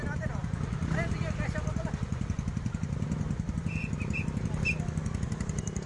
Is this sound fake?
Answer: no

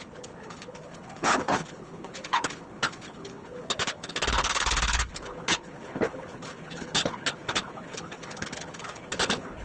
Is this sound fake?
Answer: yes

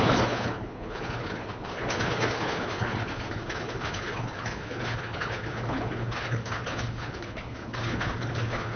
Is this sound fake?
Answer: yes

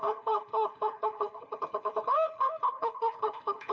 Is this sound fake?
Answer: yes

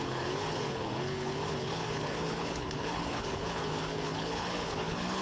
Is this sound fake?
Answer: yes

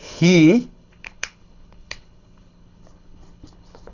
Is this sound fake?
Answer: yes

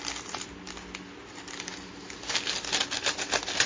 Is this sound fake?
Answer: no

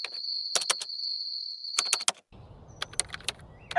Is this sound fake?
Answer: no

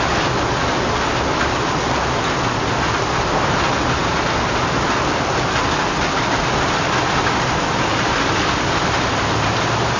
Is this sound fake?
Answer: no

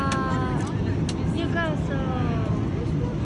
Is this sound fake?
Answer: no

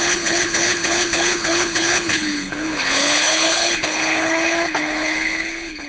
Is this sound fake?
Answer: yes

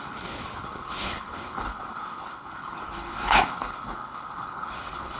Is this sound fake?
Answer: yes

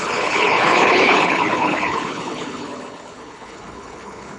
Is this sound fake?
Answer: yes